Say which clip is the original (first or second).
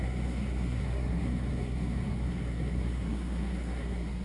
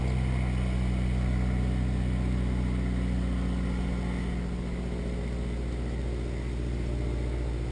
second